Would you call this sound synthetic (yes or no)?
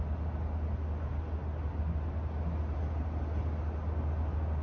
no